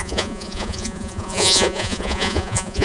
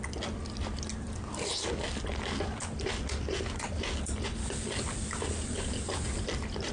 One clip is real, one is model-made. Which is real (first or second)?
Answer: second